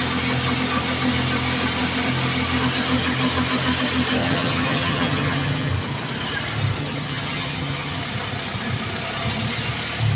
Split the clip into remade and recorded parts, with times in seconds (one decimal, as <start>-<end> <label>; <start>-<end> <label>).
0.0-4.2 recorded; 4.2-5.7 remade; 5.7-6.8 recorded; 6.8-8.0 remade; 8.0-10.2 recorded